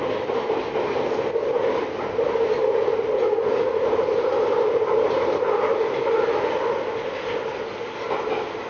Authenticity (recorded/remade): recorded